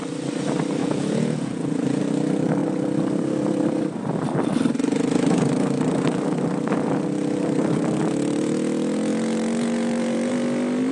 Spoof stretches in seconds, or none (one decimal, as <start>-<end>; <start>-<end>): 0.8-2.0